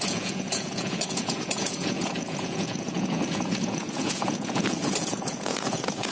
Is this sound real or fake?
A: fake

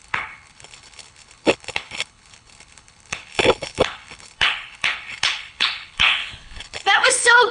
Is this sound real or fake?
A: fake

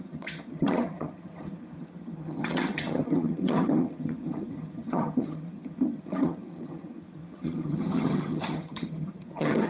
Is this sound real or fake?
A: fake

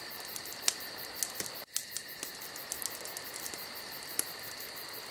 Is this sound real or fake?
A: real